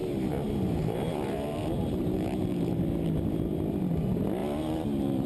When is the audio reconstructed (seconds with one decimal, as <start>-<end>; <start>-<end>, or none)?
0.0-2.8; 4.4-5.3